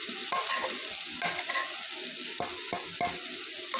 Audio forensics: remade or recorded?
recorded